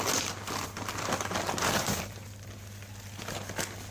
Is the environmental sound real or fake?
real